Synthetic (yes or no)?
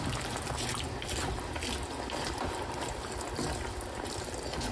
no